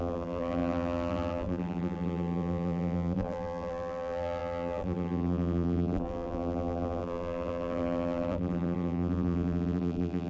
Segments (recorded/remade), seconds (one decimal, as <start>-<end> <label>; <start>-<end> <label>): 0.0-10.3 remade